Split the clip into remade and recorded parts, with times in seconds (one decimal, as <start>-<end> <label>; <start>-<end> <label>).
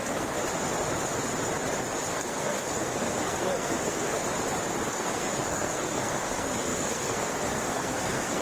0.0-0.4 remade; 0.4-2.1 recorded; 2.1-4.3 remade; 4.3-4.9 recorded; 4.9-8.4 remade